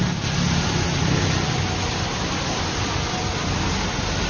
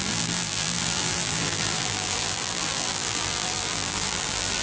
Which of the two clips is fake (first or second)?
second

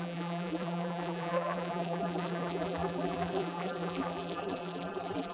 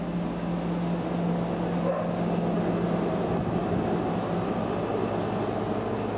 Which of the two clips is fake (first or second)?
first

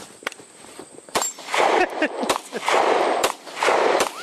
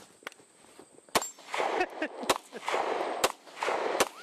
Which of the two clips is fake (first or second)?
first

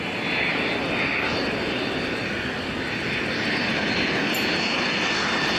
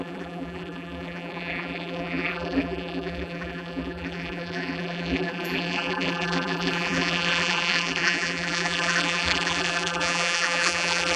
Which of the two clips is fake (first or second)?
second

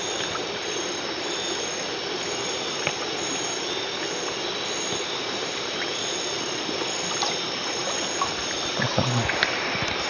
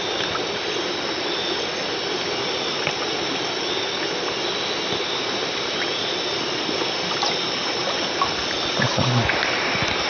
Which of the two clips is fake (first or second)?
first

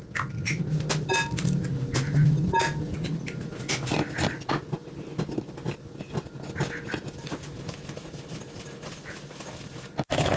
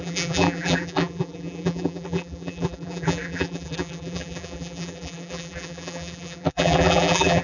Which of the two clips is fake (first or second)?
second